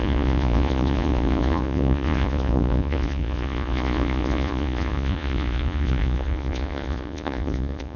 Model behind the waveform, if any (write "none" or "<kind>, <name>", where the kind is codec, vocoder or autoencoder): vocoder, Vocos